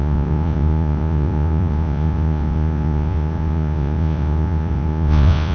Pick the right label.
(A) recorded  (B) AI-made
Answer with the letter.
B